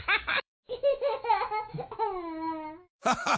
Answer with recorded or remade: remade